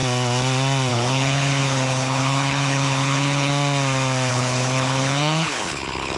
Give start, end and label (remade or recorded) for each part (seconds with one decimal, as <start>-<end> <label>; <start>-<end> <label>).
0.0-0.9 recorded; 0.9-3.5 remade; 3.5-4.3 recorded; 4.3-6.2 remade